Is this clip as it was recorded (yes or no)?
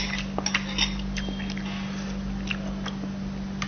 yes